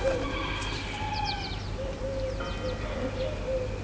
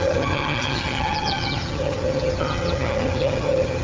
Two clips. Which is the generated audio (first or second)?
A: second